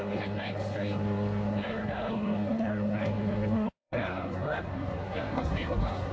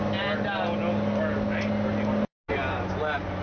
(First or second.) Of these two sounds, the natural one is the second